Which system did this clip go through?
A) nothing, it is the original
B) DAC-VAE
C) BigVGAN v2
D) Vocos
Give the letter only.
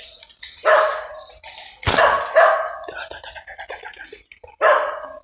A